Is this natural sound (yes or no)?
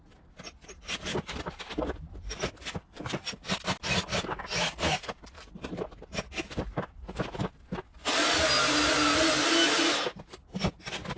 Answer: yes